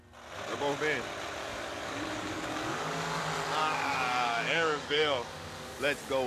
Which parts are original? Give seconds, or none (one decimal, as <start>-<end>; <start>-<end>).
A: 0.0-1.4; 3.2-3.6; 5.8-6.3